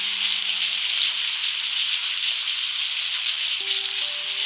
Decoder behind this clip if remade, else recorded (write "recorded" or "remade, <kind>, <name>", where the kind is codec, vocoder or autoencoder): recorded